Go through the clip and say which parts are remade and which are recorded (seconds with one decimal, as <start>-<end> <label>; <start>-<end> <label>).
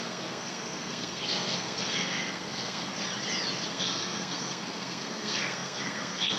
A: 0.0-2.9 remade; 2.9-3.7 recorded; 3.7-6.4 remade